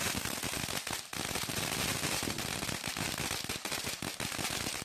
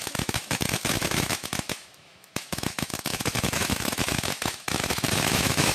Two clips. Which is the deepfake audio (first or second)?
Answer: second